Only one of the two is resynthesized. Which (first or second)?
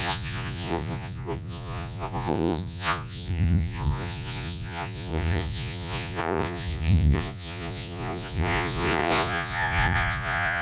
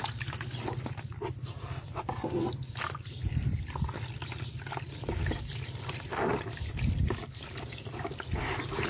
first